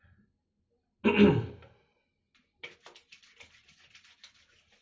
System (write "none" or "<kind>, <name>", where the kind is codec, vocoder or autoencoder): none